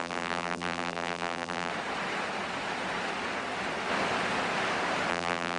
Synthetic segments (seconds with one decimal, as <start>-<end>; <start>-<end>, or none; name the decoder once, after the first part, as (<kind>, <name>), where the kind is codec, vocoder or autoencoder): 0.0-1.7 (vocoder, BigVGAN v2); 5.1-5.6